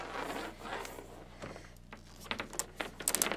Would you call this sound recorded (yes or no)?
yes